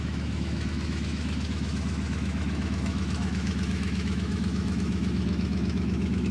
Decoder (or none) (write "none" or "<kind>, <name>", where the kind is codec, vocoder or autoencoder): autoencoder, DAC-VAE